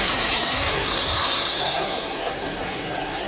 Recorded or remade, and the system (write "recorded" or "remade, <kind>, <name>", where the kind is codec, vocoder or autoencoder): remade, codec, SNAC